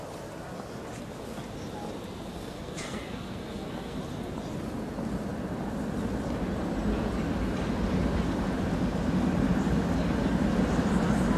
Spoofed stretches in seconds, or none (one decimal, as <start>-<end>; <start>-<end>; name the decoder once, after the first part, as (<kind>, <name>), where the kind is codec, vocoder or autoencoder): 2.3-4.0 (codec, SNAC)